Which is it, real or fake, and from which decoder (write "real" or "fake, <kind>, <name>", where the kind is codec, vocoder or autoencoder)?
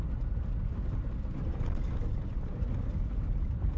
real